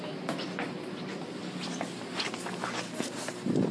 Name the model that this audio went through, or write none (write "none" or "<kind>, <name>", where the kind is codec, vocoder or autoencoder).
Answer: none